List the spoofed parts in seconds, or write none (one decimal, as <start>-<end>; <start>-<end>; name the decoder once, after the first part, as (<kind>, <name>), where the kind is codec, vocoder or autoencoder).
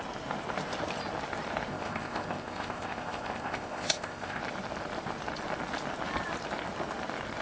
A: 1.7-4.4 (codec, ZipCodec)